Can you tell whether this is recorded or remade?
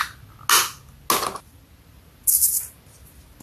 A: recorded